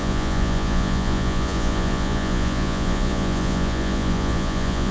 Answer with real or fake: fake